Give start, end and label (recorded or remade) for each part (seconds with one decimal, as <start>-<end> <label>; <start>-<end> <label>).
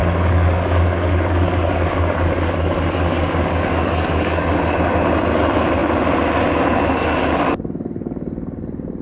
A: 0.0-4.5 remade; 4.5-9.0 recorded